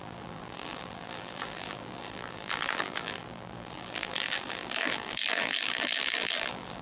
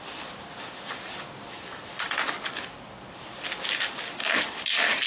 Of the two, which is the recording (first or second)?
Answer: second